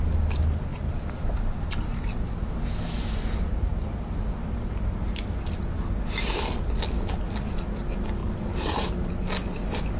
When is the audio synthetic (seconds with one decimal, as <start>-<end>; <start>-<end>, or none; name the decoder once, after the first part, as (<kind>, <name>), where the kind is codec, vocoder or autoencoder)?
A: 0.7-1.6 (vocoder, BigVGAN v2); 8.2-9.1